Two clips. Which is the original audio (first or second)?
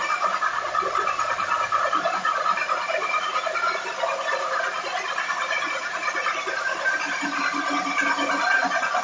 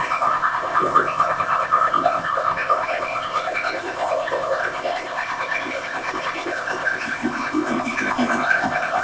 first